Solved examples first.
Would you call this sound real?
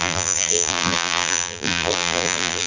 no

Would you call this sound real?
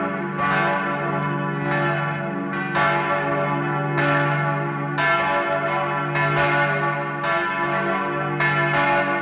yes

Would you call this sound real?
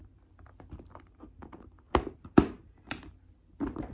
no